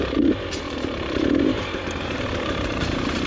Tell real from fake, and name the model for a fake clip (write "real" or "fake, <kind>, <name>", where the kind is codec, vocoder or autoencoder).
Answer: fake, vocoder, BigVGAN v2